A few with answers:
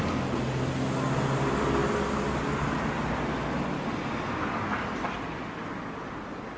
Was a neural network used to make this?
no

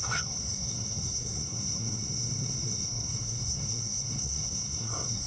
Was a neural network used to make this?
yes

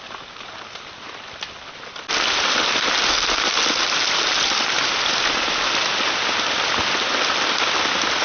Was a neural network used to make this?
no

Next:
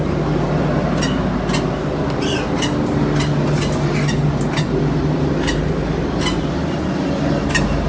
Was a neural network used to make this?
no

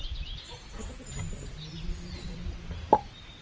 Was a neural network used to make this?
no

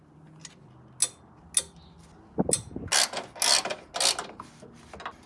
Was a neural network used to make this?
no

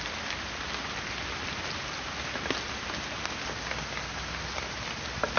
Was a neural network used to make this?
no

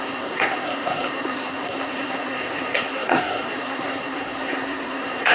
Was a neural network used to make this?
yes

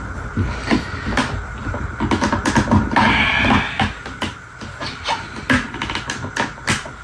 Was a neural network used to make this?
no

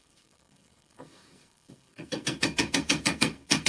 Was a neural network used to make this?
yes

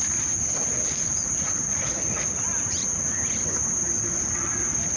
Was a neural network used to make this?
no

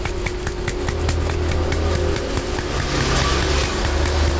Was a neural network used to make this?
no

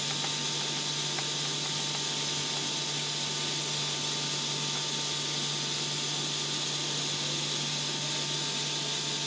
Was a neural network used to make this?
no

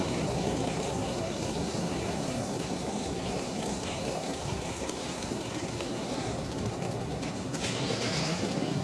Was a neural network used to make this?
yes